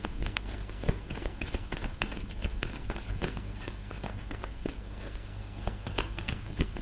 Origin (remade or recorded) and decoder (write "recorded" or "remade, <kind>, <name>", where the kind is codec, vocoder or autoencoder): remade, codec, SNAC